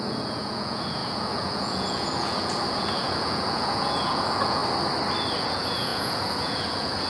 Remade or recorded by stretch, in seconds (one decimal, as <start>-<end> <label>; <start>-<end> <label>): 0.0-4.6 remade; 4.6-5.4 recorded; 5.4-7.1 remade